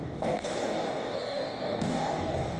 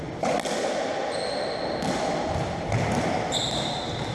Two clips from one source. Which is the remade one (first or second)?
first